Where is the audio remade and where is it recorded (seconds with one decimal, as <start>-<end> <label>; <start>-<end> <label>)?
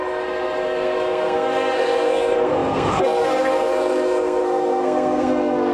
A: 0.0-5.7 remade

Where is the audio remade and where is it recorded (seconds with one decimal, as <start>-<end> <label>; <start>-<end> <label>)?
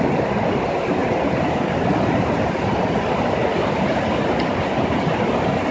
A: 0.0-5.7 recorded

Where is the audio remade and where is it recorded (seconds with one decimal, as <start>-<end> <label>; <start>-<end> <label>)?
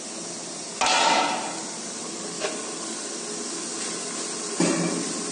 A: 0.0-5.3 recorded